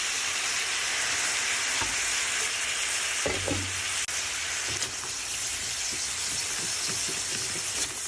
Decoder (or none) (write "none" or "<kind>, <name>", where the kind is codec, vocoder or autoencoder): none